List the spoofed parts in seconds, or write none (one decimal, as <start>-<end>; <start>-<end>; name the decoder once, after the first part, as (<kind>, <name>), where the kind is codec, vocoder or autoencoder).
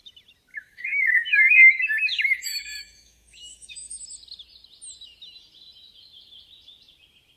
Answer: 0.5-4.0 (autoencoder, DAC-VAE)